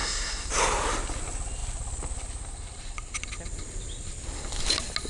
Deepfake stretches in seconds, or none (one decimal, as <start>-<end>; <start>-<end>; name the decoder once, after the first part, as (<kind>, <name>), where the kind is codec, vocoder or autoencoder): 0.0-0.5 (codec, SNAC)

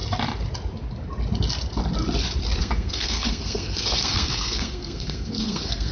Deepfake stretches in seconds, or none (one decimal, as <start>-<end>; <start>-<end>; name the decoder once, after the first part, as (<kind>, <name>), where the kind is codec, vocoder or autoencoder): 2.6-5.9 (codec, SNAC)

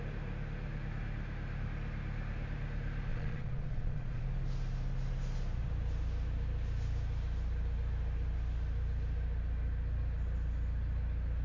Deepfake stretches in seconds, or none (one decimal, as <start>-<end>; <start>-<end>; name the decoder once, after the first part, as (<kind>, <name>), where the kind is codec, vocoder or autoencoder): 3.1-4.2 (vocoder, Vocos)

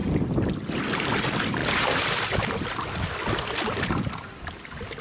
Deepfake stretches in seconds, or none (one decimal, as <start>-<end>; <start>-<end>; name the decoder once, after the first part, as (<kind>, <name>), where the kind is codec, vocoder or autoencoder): none

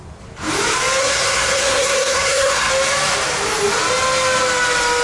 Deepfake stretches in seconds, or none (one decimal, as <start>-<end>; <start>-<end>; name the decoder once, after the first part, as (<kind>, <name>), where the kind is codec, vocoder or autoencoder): 1.0-2.7 (codec, SNAC)

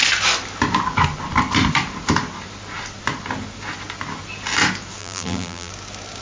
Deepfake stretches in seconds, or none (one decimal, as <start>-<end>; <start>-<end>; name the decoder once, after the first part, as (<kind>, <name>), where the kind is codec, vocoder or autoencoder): 5.0-5.7 (vocoder, BigVGAN v2)